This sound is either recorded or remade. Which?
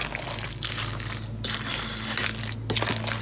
recorded